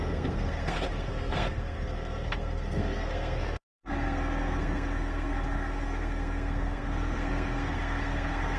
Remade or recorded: remade